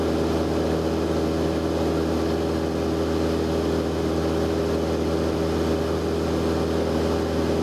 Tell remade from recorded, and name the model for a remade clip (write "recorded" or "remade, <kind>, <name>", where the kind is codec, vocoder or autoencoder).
recorded